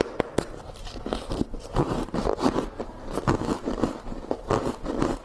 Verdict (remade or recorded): recorded